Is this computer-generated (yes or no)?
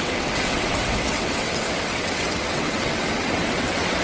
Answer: yes